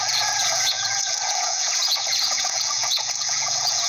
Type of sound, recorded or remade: remade